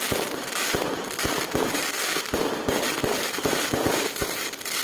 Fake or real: real